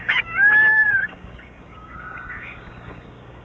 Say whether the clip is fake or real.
fake